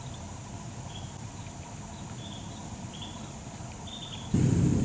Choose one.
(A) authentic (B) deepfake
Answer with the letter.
A